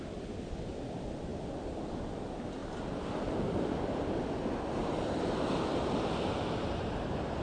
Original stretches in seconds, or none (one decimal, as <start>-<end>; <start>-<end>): 0.0-7.4

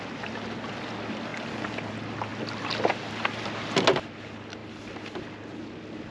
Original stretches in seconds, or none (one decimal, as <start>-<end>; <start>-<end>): 0.0-6.1

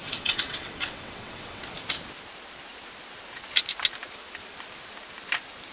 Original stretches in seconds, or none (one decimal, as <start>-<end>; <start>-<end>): 1.6-5.7

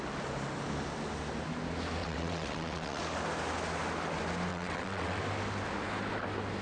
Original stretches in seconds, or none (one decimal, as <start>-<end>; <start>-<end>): 0.0-2.0; 3.0-4.5; 5.2-6.6

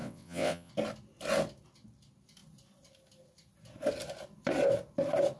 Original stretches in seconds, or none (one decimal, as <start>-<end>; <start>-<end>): 0.7-5.4

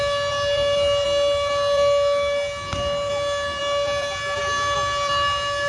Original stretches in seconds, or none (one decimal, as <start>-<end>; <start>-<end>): 0.0-5.7

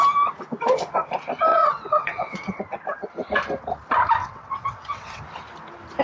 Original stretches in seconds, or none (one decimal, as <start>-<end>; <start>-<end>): 0.0-1.5; 2.6-4.2; 5.2-6.0

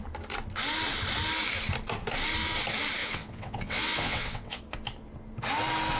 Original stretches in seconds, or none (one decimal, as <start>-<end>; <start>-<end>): 0.0-3.0; 4.6-6.0